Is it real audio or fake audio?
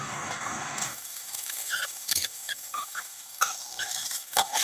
fake